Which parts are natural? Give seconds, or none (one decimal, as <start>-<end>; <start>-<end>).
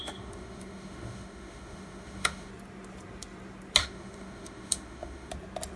2.5-3.8; 5.3-5.8